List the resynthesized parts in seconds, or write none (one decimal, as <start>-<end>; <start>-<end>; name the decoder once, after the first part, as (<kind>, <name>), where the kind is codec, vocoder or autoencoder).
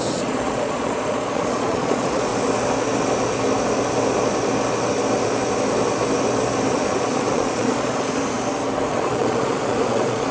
0.0-2.3 (vocoder, Vocos); 6.7-8.2; 8.9-10.3